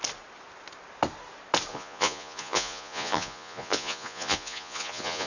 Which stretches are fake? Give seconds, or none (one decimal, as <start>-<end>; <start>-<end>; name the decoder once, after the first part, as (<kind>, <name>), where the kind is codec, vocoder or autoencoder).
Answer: 1.7-5.3 (vocoder, Vocos)